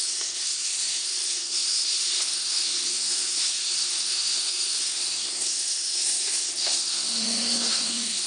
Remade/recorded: remade